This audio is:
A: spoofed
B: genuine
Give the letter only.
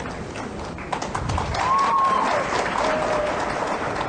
B